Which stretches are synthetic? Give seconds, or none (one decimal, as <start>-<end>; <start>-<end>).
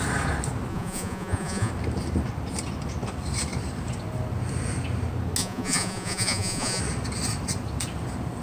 0.7-1.7; 5.4-6.8